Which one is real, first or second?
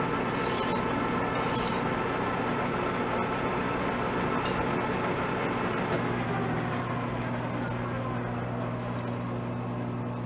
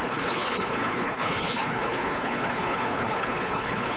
first